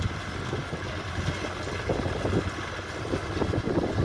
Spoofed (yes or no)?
no